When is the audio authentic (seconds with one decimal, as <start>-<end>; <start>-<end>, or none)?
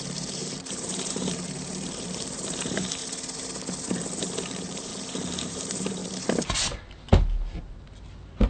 3.0-4.5; 4.9-5.4; 6.0-7.6